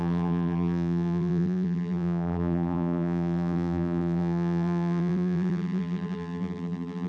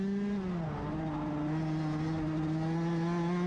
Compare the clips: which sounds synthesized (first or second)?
first